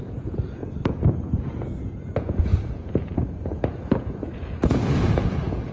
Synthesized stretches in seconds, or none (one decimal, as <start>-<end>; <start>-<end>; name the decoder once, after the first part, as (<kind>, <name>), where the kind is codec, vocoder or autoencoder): 0.0-5.7 (vocoder, Vocos)